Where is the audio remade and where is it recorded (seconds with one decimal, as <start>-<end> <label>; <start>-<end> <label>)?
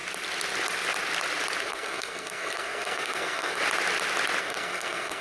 0.0-1.6 recorded; 1.6-3.6 remade; 3.6-4.4 recorded; 4.4-5.2 remade